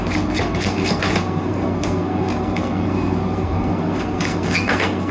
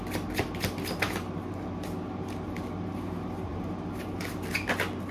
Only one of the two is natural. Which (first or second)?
second